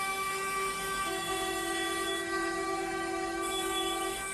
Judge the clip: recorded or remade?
remade